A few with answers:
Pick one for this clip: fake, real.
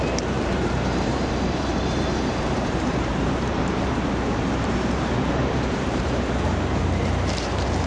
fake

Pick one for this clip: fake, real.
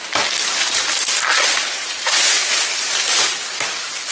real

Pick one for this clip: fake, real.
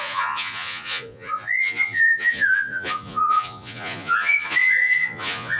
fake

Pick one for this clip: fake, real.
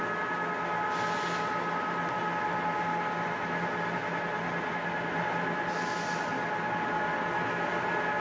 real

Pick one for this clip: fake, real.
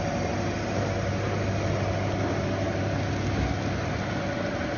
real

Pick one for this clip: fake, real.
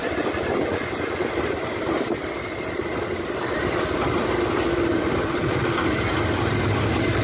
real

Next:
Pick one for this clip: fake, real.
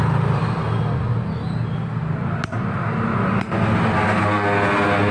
real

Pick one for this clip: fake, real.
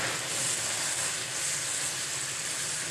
real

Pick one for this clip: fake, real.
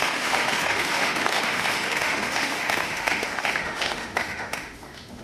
fake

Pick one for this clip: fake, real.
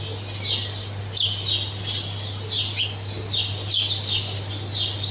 real